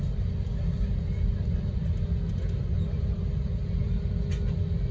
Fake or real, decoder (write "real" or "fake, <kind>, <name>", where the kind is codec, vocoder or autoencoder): real